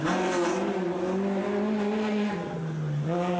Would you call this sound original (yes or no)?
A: yes